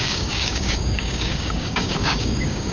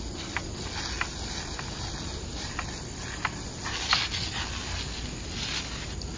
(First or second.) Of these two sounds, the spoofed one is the first